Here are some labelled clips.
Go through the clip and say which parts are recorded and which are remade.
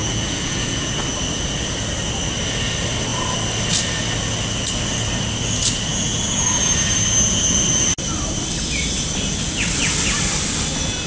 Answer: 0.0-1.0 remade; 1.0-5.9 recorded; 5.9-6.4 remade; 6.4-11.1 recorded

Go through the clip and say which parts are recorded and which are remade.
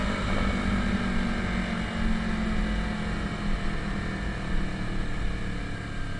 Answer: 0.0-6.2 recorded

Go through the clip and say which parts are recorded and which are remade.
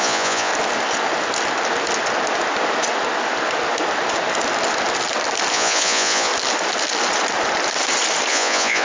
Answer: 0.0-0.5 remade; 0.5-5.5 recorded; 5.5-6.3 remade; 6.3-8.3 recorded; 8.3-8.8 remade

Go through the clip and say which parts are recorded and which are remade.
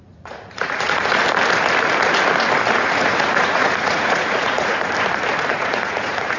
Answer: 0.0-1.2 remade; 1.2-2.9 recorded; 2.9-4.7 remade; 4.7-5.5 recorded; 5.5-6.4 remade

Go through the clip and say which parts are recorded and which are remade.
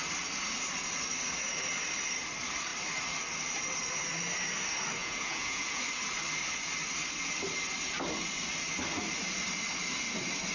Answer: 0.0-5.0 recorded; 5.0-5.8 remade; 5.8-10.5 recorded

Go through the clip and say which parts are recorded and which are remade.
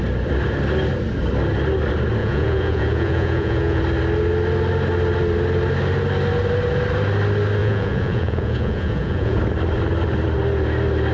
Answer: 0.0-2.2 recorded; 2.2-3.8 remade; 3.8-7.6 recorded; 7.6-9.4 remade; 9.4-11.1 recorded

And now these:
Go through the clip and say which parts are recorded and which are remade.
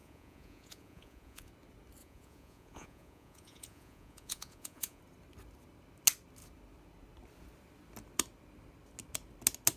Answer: 0.0-1.5 remade; 1.5-2.0 recorded; 2.0-5.0 remade; 5.0-9.8 recorded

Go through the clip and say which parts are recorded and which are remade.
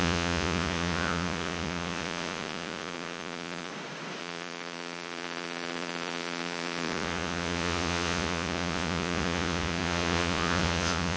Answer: 0.0-3.7 remade; 3.7-4.2 recorded; 4.2-11.2 remade